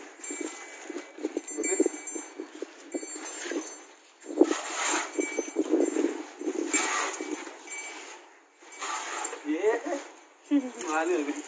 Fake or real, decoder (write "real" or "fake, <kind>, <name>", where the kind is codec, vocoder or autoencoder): real